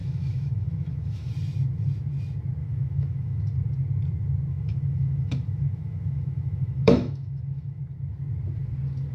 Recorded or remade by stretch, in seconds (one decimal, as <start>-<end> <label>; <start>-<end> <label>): 0.0-1.3 remade; 1.3-2.6 recorded; 2.6-3.4 remade; 3.4-4.5 recorded; 4.5-7.8 remade; 7.8-9.1 recorded